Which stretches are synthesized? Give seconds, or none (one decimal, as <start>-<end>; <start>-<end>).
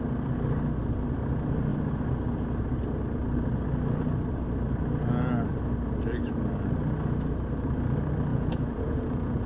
8.3-9.5